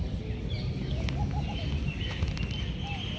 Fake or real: real